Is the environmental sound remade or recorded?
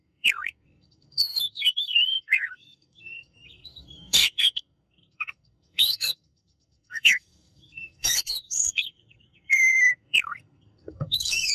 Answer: remade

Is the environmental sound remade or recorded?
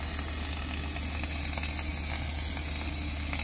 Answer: recorded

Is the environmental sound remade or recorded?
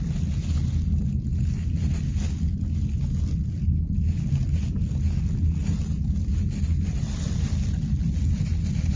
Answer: recorded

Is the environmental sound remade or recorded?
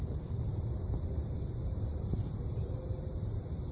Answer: recorded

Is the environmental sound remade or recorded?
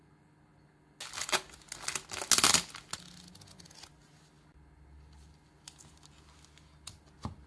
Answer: recorded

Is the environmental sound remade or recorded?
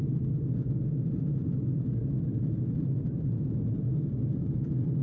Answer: remade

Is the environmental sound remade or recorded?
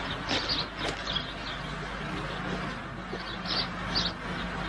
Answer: recorded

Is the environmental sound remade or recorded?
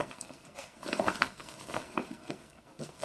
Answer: remade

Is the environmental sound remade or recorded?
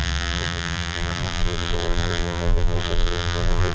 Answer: remade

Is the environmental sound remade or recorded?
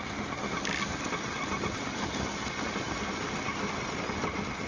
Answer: recorded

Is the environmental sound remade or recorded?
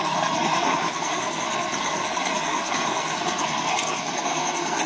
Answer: remade